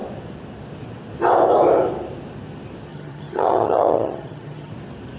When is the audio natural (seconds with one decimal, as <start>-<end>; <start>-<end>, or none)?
0.0-2.9; 4.7-5.2